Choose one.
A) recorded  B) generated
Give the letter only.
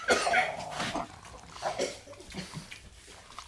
A